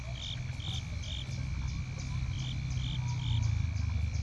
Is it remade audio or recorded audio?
recorded